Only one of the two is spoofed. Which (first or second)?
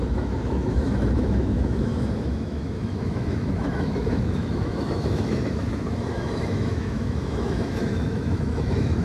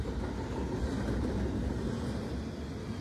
first